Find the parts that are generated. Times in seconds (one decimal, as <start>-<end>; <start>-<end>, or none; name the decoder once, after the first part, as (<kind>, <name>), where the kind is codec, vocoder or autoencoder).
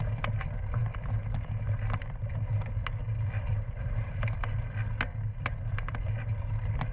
none